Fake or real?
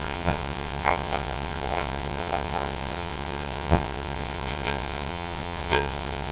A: fake